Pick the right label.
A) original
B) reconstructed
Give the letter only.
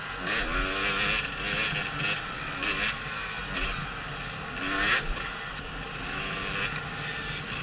A